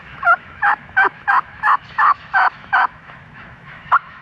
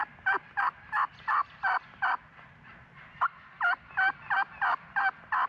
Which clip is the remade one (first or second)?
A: first